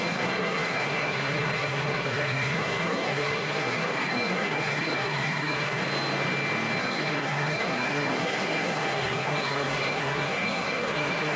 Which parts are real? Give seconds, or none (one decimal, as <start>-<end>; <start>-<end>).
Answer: 5.8-6.8